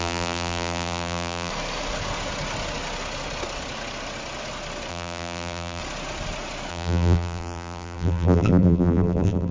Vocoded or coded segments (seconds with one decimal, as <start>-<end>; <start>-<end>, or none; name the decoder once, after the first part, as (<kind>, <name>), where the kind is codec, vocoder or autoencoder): 0.0-1.5 (vocoder, BigVGAN v2); 4.9-5.8; 6.7-9.5

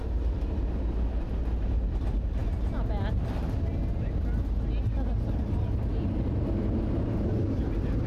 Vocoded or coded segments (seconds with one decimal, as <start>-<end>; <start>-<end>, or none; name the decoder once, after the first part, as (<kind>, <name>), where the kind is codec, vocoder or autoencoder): none